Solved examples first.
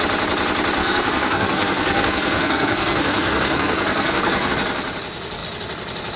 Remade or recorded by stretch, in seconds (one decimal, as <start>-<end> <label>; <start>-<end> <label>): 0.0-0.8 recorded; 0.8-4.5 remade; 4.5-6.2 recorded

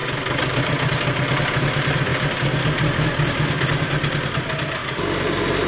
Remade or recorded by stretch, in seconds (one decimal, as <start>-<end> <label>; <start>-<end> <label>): 0.0-5.7 recorded

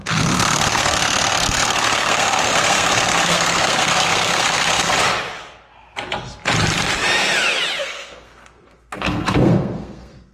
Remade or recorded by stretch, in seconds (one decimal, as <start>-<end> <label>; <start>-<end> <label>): 0.0-4.9 remade; 4.9-7.8 recorded; 7.8-10.3 remade

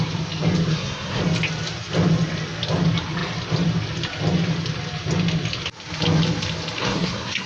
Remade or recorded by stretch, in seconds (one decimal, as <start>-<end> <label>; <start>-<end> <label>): 0.0-0.7 recorded; 0.7-1.2 remade; 1.2-6.8 recorded; 6.8-7.5 remade